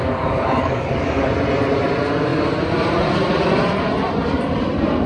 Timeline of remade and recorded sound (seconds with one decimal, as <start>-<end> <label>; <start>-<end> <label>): 0.0-1.3 remade; 1.3-5.1 recorded